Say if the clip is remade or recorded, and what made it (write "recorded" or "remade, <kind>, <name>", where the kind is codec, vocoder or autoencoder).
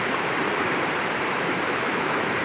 remade, vocoder, BigVGAN v2